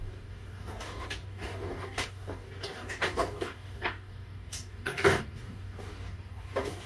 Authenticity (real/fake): fake